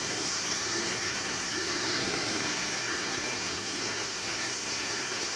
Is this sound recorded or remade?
remade